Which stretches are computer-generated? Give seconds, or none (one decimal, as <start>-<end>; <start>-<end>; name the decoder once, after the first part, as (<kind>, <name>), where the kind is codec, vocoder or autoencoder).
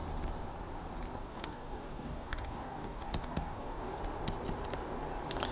1.2-4.0 (codec, DAC)